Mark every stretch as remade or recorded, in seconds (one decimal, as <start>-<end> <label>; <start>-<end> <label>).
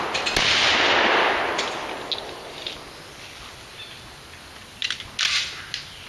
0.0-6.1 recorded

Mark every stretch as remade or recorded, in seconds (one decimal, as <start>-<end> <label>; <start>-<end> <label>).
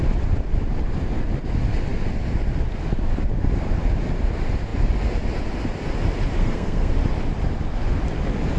0.0-6.4 recorded; 6.4-6.9 remade; 6.9-8.6 recorded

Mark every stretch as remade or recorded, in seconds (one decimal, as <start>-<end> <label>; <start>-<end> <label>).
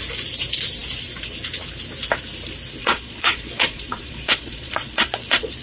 0.0-2.8 recorded; 2.8-5.6 remade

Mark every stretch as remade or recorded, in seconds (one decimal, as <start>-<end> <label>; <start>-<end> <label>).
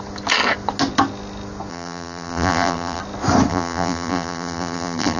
0.0-1.7 recorded; 1.7-3.0 remade; 3.0-3.5 recorded; 3.5-5.2 remade